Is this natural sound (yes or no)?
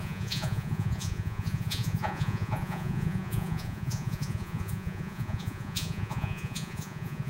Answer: no